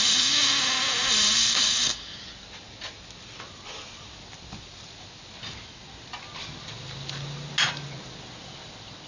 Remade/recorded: recorded